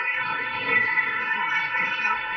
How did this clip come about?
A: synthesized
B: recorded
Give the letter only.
A